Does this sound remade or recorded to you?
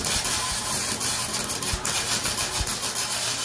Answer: recorded